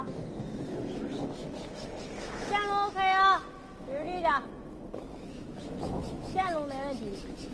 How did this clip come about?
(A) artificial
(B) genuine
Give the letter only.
A